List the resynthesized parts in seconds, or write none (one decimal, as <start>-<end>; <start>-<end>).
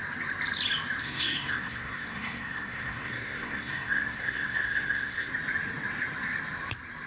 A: 1.0-5.3